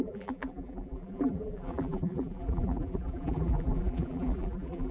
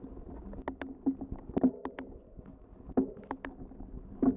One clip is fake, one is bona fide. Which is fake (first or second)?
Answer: first